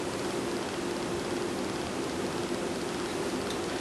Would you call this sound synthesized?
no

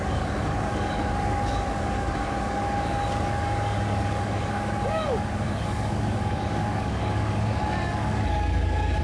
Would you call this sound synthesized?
yes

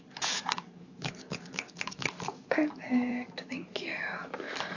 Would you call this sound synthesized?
yes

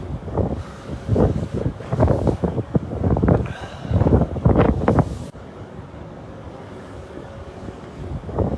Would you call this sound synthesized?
yes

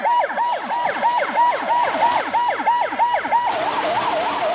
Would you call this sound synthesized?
no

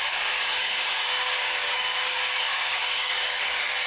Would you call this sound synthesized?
yes